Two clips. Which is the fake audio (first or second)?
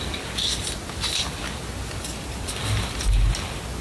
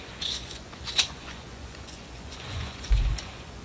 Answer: second